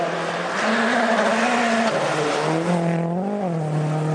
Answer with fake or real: real